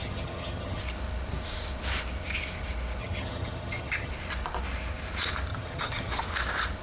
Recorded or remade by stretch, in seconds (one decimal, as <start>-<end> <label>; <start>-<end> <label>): 0.0-0.8 remade; 0.8-3.0 recorded; 3.0-4.1 remade; 4.1-5.5 recorded; 5.5-6.1 remade; 6.1-6.8 recorded